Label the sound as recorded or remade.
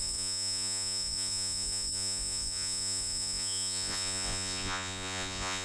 remade